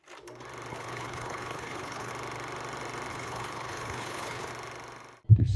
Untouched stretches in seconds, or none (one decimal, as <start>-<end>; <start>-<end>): 0.0-0.7; 2.1-3.1; 4.5-5.6